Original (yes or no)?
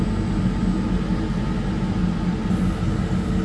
yes